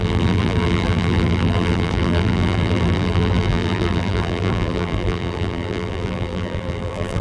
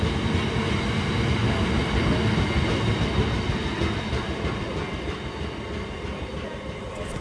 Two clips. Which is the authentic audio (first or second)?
second